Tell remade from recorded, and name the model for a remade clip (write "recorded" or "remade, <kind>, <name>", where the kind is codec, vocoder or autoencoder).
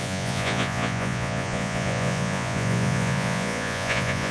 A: remade, vocoder, Vocos